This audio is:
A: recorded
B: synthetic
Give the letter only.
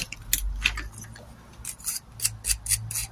A